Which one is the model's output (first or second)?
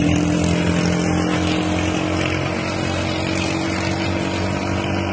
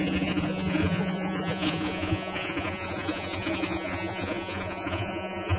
second